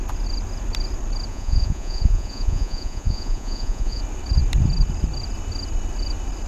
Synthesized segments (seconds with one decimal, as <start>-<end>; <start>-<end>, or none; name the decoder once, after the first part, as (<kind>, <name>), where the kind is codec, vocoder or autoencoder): 1.3-4.0 (vocoder, Vocos)